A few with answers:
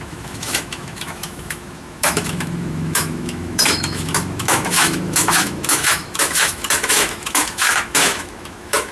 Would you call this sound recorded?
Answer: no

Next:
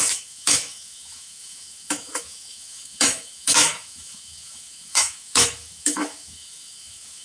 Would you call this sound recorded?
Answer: no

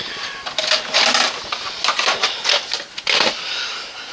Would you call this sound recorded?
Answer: yes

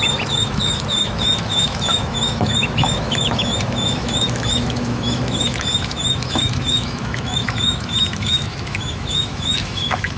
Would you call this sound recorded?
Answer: no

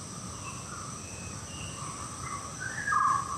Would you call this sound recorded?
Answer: yes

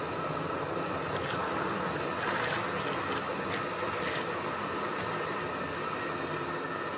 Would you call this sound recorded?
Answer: yes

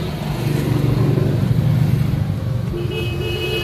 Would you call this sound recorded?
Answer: yes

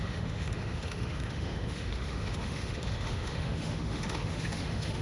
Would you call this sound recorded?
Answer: no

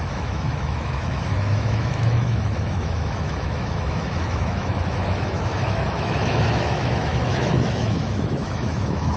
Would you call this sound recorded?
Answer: no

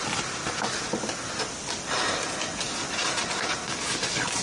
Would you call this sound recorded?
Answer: yes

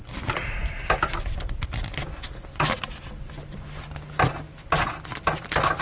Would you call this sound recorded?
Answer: yes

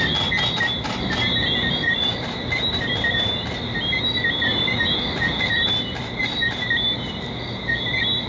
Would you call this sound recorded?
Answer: yes